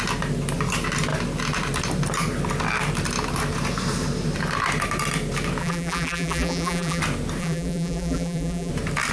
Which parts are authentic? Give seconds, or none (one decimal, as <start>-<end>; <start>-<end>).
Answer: 0.0-5.6; 7.0-7.4; 8.7-9.1